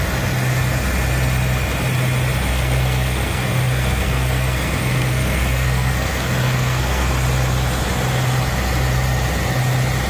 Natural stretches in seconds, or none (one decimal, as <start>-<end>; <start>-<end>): 0.0-2.5; 7.1-10.1